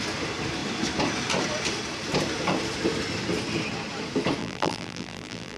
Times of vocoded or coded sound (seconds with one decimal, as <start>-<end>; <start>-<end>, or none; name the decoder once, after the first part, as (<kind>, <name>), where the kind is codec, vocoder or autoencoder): 4.4-5.6 (vocoder, BigVGAN v2)

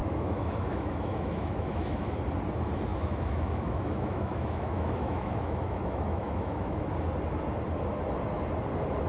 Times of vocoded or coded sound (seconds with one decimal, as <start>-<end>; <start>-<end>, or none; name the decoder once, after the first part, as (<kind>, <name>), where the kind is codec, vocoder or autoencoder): 0.0-2.2 (autoencoder, DAC-VAE); 2.9-6.9